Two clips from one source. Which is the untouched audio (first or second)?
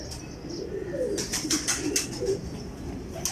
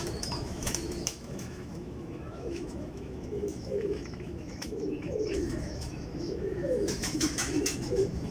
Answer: first